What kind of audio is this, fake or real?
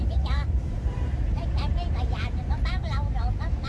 fake